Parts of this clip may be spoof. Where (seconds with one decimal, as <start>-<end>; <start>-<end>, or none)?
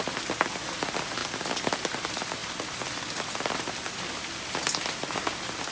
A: none